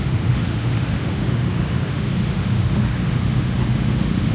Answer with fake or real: fake